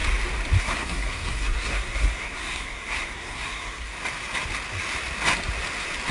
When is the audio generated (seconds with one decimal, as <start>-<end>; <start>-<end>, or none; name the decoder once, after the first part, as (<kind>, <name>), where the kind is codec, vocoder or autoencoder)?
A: 0.6-3.9 (codec, SNAC)